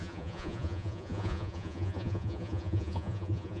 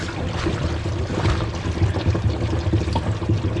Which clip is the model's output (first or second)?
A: first